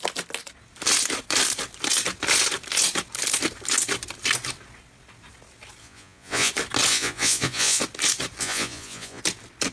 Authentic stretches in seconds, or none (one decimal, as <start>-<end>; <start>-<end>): 0.0-5.8; 6.5-6.9; 7.8-8.4; 9.2-9.7